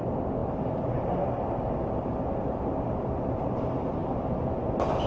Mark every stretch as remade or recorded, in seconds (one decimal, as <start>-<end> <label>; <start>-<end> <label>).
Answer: 0.0-5.1 recorded